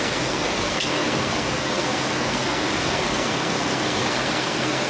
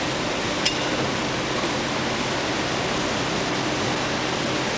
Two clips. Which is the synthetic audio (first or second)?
first